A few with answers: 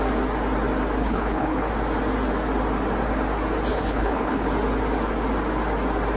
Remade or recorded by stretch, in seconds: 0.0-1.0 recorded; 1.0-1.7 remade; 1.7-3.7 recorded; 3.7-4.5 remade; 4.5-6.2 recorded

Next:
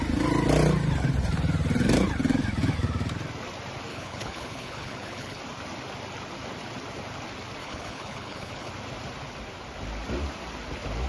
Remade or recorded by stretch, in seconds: 0.0-3.9 recorded; 3.9-5.4 remade; 5.4-7.6 recorded; 7.6-8.7 remade; 8.7-11.1 recorded